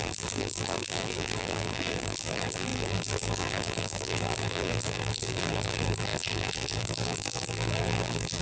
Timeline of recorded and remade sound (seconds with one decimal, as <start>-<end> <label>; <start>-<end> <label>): 0.0-8.4 remade